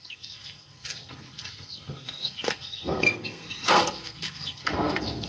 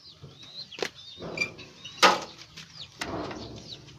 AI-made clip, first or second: first